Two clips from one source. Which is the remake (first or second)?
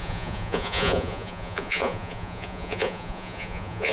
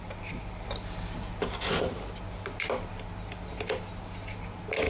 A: first